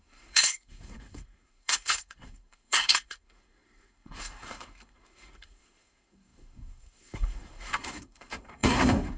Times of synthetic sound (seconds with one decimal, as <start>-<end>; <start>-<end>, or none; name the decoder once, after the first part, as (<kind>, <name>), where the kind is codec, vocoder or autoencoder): 0.0-9.2 (codec, SNAC)